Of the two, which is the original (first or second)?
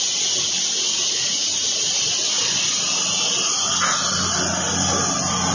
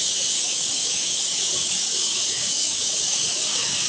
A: first